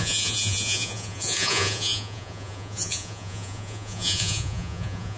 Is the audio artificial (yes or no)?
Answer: yes